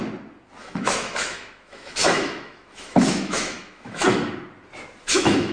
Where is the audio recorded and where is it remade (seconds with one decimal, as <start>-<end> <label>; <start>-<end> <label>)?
0.0-0.6 recorded; 0.6-4.0 remade; 4.0-5.0 recorded; 5.0-5.5 remade